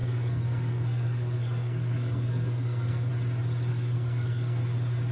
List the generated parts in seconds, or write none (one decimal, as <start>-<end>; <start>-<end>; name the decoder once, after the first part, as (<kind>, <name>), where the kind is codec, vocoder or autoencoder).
0.0-3.1 (codec, SNAC); 3.7-4.6